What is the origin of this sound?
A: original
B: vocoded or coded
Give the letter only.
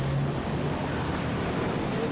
A